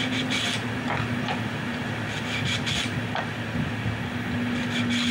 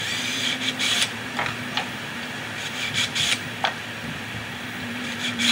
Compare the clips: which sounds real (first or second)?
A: first